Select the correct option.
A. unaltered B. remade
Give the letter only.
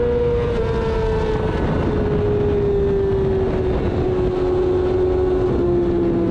A